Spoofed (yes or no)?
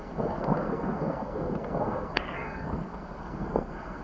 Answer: yes